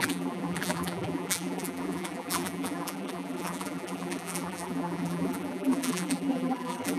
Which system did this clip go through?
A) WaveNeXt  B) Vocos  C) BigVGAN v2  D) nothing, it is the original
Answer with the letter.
C